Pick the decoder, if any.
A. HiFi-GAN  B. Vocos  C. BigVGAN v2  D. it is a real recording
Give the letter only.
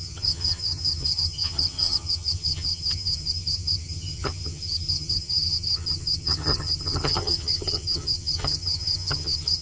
A